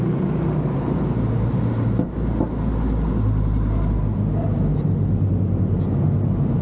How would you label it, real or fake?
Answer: real